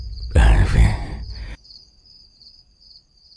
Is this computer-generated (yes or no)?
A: no